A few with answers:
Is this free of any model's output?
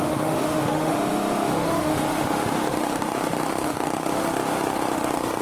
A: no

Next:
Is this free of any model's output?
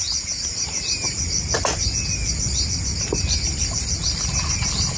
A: yes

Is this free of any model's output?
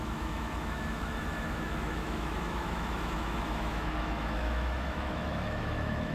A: no